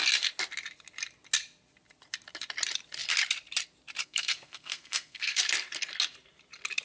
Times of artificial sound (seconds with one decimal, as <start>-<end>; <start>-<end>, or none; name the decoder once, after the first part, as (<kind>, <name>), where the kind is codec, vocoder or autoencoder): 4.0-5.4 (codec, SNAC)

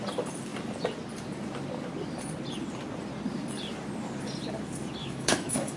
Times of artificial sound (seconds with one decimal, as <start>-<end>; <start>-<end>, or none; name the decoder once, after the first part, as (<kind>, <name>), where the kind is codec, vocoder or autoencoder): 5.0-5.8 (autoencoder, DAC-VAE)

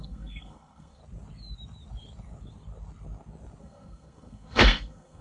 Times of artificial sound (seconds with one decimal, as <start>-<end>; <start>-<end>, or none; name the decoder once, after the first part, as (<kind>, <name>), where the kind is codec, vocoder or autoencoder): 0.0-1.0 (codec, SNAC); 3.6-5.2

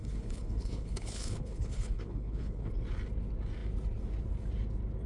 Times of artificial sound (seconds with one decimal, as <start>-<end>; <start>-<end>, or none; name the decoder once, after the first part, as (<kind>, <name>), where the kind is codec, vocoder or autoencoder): 0.0-2.7 (codec, HILCodec)

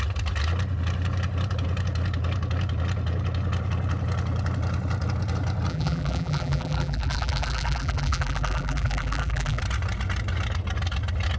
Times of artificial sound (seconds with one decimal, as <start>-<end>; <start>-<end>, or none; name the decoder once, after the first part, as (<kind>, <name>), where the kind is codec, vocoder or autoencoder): 5.7-9.6 (vocoder, BigVGAN v2)

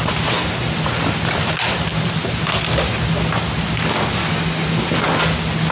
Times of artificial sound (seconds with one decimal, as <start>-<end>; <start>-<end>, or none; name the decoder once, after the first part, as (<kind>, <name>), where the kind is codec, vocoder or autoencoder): 4.2-4.8 (codec, DAC)

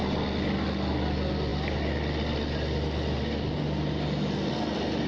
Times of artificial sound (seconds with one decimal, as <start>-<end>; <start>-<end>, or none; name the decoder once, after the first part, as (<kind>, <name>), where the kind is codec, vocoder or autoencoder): none